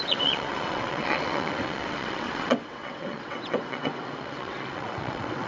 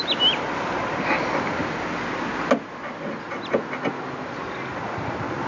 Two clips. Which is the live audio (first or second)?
second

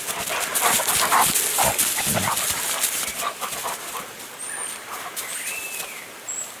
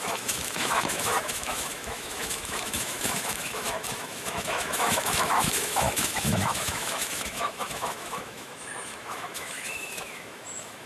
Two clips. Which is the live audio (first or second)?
first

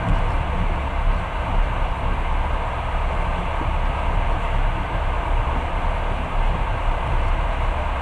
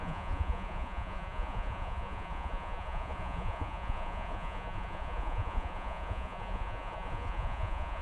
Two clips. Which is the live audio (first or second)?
first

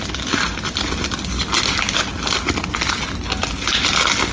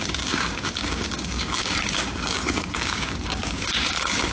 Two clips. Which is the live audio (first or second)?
first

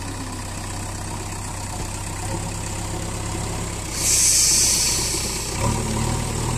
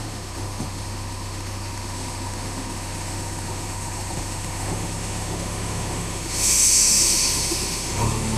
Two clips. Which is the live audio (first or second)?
first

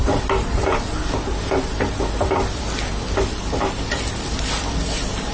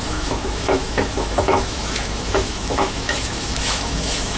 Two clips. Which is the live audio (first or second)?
first